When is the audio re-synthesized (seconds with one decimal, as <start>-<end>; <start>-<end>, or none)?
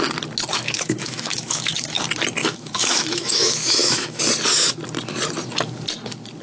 0.5-2.0; 2.4-4.2